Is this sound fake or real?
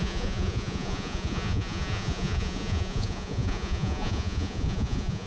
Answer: fake